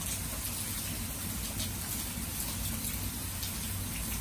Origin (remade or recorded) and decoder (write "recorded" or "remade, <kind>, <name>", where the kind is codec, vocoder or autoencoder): recorded